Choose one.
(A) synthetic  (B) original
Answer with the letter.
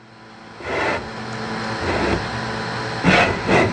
B